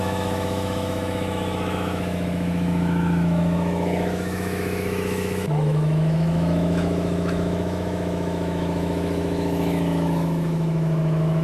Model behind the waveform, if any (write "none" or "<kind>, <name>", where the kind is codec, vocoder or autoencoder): autoencoder, DAC-VAE